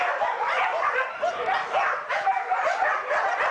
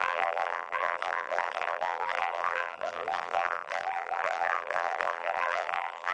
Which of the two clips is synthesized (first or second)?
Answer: second